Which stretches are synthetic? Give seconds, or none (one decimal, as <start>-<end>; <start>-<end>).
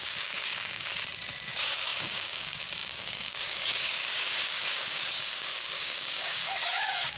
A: 0.0-0.9; 1.5-7.2